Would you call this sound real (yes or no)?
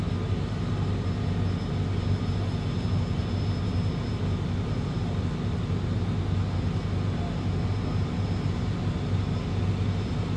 yes